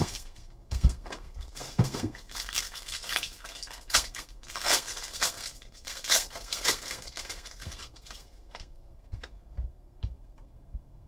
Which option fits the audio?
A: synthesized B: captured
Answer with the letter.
A